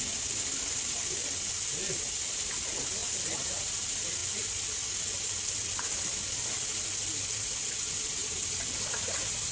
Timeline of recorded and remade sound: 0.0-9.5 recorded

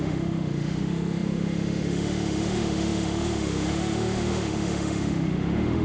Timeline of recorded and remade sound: 0.0-5.8 remade

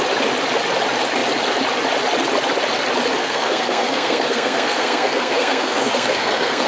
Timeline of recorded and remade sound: 0.0-3.2 recorded; 3.2-6.7 remade

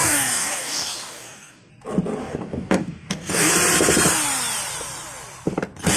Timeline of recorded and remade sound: 0.0-1.7 remade; 1.7-2.2 recorded; 2.2-3.5 remade; 3.5-6.0 recorded

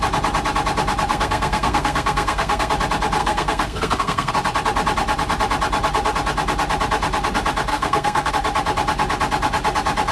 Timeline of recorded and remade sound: 0.0-1.1 recorded; 1.1-2.7 remade; 2.7-3.2 recorded; 3.2-4.3 remade; 4.3-7.7 recorded; 7.7-8.3 remade; 8.3-10.1 recorded

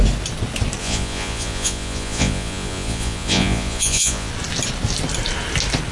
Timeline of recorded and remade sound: 0.0-0.8 recorded; 0.8-4.3 remade; 4.3-5.9 recorded